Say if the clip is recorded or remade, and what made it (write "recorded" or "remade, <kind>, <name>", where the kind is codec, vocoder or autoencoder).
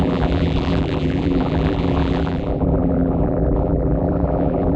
remade, vocoder, BigVGAN v2